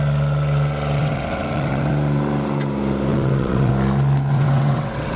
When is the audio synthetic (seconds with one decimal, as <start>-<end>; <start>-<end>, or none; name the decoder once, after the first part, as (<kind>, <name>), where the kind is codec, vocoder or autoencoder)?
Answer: 1.0-1.9 (vocoder, WaveNeXt); 3.1-3.7; 4.3-5.2